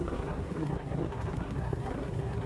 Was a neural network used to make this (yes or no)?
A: yes